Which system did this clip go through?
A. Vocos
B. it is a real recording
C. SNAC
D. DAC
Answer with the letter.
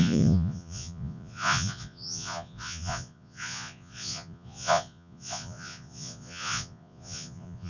A